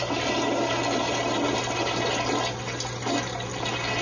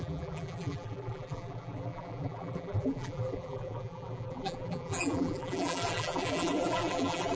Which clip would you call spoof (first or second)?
second